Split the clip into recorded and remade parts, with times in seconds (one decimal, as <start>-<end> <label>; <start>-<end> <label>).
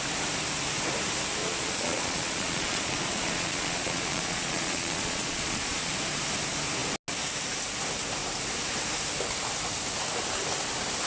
0.0-1.4 recorded; 1.4-5.9 remade; 5.9-11.1 recorded